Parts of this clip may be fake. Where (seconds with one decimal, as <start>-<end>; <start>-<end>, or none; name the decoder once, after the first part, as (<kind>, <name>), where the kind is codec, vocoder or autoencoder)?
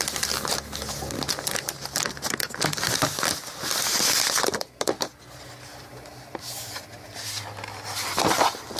none